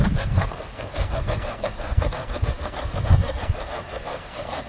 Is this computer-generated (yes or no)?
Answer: yes